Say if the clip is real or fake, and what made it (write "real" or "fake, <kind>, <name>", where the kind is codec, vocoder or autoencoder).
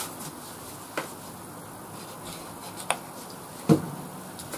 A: real